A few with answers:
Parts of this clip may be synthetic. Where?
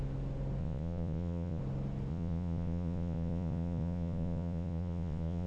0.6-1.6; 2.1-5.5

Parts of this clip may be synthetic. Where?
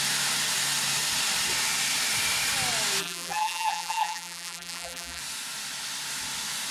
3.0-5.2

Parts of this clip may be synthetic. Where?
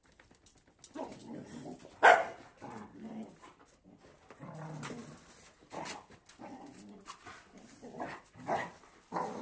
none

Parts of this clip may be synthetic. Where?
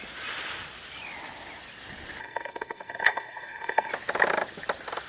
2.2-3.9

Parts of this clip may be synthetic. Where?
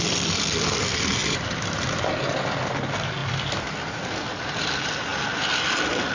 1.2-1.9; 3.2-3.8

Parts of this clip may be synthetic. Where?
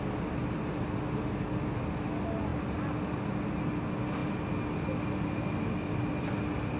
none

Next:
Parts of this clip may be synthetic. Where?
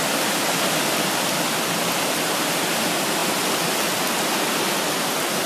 none